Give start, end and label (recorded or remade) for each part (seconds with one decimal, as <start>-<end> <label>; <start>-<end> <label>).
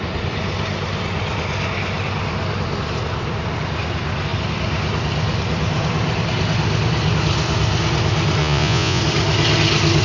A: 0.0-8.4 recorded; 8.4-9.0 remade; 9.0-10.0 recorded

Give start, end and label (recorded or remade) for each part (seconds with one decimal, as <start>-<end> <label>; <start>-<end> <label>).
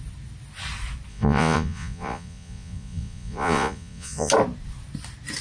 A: 0.0-1.1 recorded; 1.1-4.3 remade; 4.3-5.4 recorded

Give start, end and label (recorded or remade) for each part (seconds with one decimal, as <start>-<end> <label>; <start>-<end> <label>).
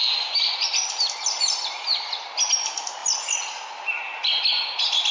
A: 0.0-5.1 recorded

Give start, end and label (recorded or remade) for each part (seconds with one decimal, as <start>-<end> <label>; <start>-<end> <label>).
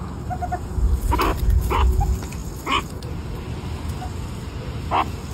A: 0.0-5.3 recorded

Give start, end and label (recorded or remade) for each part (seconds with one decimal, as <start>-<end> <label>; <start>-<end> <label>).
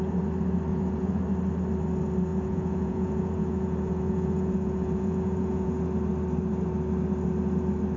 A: 0.0-0.7 recorded; 0.7-1.2 remade; 1.2-2.3 recorded; 2.3-5.8 remade; 5.8-8.0 recorded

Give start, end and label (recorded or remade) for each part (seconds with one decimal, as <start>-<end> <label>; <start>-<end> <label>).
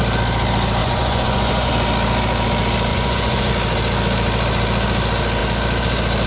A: 0.0-0.8 recorded; 0.8-1.7 remade; 1.7-2.9 recorded; 2.9-3.5 remade; 3.5-6.3 recorded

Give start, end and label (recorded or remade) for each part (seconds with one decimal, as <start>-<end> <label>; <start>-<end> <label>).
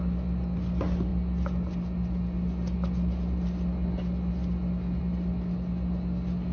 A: 0.0-6.5 recorded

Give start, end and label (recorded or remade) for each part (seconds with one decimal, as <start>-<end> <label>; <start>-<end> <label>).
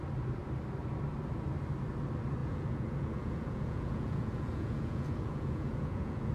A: 0.0-2.4 recorded; 2.4-6.3 remade